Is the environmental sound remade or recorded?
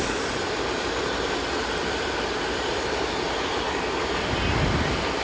remade